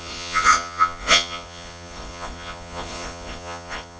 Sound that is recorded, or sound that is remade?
remade